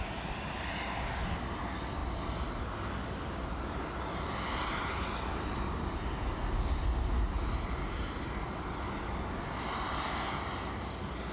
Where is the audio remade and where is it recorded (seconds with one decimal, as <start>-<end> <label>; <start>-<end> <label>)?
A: 0.0-11.3 recorded